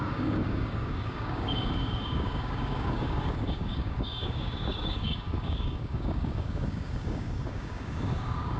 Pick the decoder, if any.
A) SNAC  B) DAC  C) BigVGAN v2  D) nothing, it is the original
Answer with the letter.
B